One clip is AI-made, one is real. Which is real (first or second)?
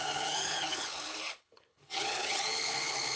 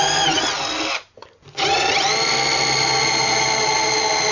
second